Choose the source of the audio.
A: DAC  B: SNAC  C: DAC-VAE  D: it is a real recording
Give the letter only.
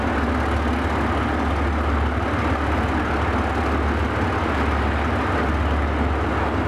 D